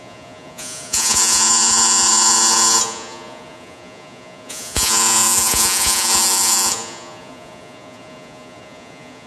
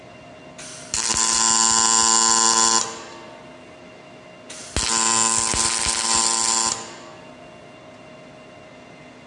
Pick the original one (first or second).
second